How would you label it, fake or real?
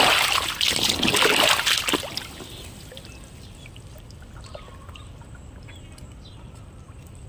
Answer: real